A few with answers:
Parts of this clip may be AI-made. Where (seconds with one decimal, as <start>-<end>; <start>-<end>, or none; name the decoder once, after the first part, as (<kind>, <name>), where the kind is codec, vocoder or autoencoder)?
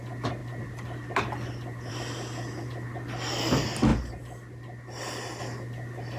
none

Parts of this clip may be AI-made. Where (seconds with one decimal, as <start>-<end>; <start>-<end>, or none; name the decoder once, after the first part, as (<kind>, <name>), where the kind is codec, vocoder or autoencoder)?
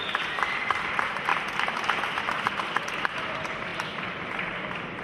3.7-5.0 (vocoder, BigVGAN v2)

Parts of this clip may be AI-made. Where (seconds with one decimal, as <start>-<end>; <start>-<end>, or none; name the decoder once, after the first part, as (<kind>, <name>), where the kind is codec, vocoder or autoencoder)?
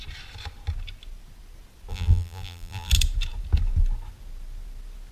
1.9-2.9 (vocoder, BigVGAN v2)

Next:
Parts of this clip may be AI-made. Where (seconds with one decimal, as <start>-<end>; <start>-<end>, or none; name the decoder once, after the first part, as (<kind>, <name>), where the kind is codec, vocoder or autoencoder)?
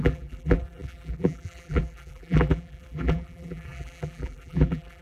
0.0-5.0 (vocoder, BigVGAN v2)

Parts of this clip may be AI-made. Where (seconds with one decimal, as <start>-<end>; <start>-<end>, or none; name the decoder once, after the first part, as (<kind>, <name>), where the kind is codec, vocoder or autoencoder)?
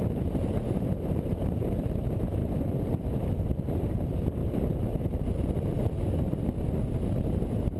0.0-2.4 (vocoder, BigVGAN v2); 3.1-4.4; 7.2-7.8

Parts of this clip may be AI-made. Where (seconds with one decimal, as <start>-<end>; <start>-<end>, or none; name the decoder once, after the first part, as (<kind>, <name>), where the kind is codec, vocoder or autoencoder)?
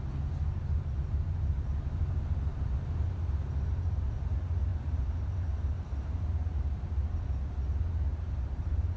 2.5-3.1 (vocoder, BigVGAN v2); 4.7-6.7; 8.1-9.0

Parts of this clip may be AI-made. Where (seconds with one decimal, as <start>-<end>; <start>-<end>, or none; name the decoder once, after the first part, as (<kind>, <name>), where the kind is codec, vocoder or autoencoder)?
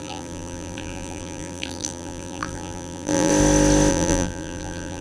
0.0-3.3 (vocoder, BigVGAN v2); 3.9-5.0